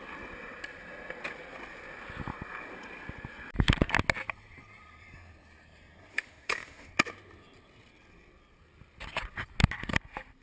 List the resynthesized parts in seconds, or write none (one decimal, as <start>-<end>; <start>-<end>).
6.1-6.9